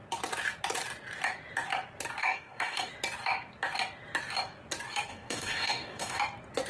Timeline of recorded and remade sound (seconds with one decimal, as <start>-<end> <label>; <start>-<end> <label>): 0.0-2.2 recorded; 2.2-2.9 remade; 2.9-5.1 recorded; 5.1-6.2 remade; 6.2-6.7 recorded